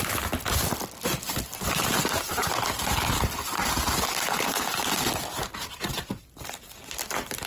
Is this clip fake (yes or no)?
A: no